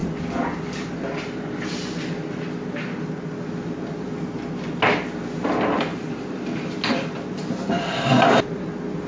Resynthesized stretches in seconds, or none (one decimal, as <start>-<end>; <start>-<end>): none